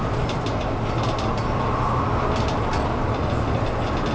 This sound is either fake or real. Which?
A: real